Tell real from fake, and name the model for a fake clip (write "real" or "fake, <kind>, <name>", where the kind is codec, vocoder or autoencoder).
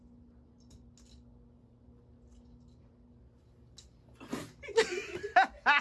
real